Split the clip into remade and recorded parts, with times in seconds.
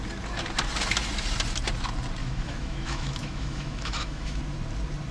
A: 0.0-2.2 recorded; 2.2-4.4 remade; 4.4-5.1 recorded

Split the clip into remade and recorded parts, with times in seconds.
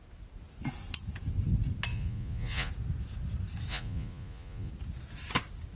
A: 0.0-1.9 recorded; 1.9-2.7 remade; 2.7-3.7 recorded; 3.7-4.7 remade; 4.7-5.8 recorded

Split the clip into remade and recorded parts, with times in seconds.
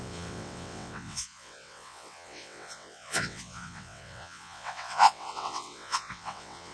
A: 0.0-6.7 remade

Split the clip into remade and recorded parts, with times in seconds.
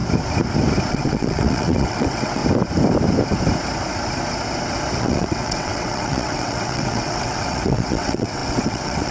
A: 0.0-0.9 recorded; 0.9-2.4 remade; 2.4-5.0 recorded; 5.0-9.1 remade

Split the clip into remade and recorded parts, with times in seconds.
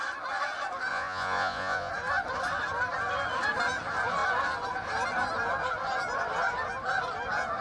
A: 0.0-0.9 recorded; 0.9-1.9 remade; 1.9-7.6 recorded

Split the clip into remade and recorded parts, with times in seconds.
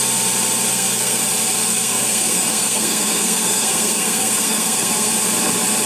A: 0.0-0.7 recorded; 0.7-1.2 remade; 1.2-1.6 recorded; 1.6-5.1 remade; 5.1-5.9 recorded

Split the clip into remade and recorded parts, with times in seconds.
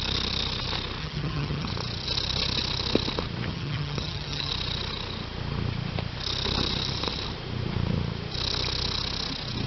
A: 0.0-1.0 recorded; 1.0-1.7 remade; 1.7-3.5 recorded; 3.5-4.5 remade; 4.5-9.7 recorded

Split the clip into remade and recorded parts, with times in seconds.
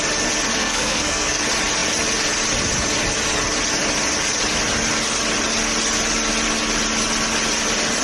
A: 0.0-0.6 recorded; 0.6-1.4 remade; 1.4-8.0 recorded